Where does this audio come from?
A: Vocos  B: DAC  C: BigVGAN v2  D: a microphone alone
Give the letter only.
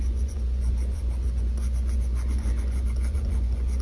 A